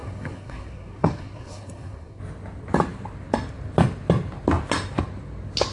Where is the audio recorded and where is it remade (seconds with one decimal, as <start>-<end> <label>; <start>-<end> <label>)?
0.0-2.2 remade; 2.2-5.7 recorded